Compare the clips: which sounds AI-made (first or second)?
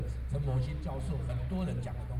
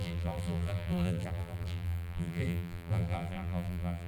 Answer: second